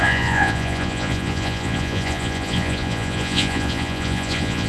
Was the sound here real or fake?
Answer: fake